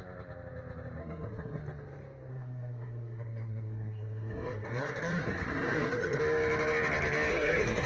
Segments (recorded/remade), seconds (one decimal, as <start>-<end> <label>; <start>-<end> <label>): 0.0-1.0 recorded; 1.0-1.6 remade; 1.6-2.3 recorded; 2.3-6.2 remade; 6.2-7.3 recorded; 7.3-7.9 remade